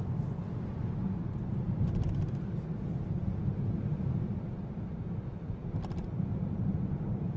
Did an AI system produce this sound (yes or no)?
no